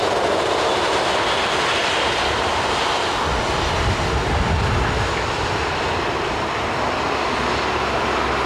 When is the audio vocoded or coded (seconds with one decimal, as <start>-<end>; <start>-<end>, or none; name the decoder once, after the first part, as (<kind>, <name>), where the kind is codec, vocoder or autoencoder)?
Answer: none